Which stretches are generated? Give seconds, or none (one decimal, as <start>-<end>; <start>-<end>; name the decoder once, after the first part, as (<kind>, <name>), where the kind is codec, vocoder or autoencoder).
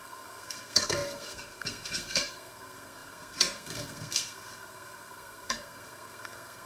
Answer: 0.0-6.7 (codec, SNAC)